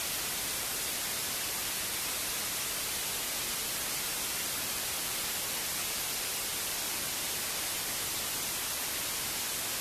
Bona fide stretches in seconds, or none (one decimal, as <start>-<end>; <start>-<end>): 0.0-6.5; 7.1-9.8